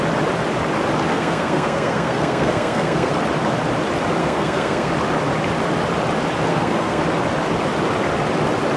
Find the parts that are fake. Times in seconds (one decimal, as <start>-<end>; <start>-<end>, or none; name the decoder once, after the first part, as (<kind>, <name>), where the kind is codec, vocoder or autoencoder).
1.1-3.1 (codec, SNAC); 4.2-4.9; 6.5-7.0